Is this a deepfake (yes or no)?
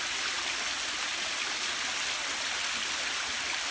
no